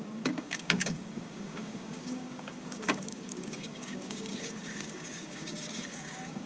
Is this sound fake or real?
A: fake